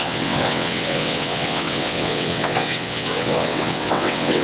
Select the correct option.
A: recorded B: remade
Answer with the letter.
B